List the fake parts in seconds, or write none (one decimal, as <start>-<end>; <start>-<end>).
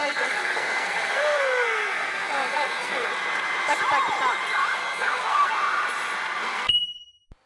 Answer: 0.0-3.1; 4.7-5.5; 6.4-7.0